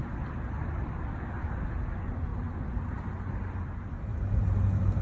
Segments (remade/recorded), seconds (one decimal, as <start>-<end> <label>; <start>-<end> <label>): 0.0-5.0 recorded